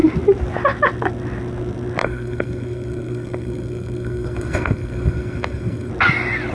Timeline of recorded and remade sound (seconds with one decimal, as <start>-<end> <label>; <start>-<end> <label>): 0.0-2.0 recorded; 2.0-5.9 remade; 5.9-6.5 recorded